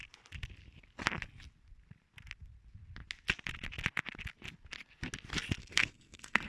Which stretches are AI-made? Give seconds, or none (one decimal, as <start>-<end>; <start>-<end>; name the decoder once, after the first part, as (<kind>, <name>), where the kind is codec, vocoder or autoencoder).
5.6-6.5 (codec, SNAC)